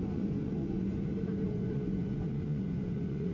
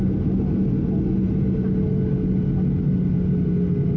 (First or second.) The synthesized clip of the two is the first